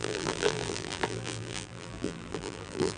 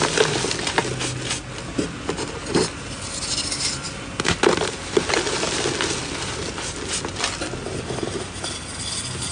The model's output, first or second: first